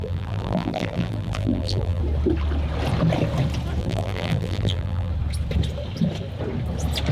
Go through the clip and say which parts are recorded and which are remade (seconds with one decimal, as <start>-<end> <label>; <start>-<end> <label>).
0.0-2.0 remade; 2.0-3.8 recorded; 3.8-5.1 remade; 5.1-7.1 recorded